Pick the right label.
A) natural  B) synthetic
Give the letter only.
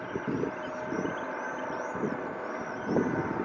A